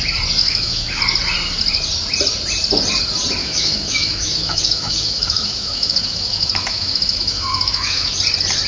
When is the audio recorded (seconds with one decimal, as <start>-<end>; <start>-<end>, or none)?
0.0-0.4; 1.0-3.4; 8.1-8.7